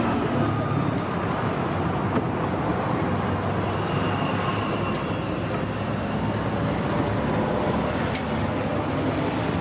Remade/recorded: recorded